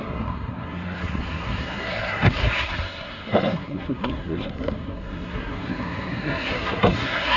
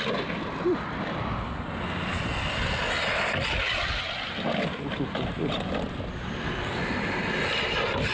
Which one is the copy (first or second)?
first